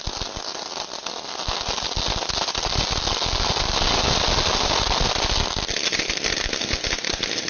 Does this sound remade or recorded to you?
recorded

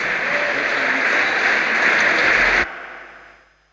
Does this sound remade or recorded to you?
recorded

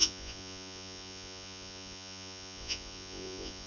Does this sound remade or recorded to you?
remade